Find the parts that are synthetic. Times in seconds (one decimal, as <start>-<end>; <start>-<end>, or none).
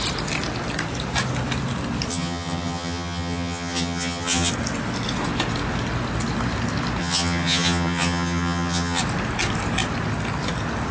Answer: 2.1-4.5; 7.0-9.0